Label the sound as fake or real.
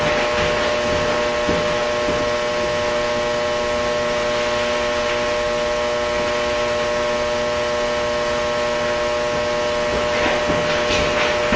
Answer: real